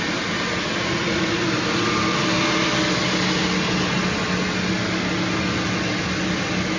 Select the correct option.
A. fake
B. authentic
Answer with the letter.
B